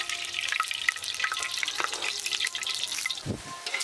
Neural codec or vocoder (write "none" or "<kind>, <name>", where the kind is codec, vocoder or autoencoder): none